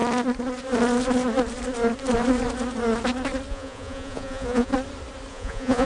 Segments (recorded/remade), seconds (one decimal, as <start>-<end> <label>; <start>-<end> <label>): 0.0-3.5 recorded; 3.5-4.7 remade; 4.7-5.3 recorded; 5.3-5.8 remade